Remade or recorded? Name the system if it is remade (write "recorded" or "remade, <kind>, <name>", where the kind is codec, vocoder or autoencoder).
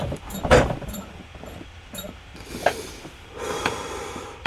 remade, vocoder, BigVGAN v2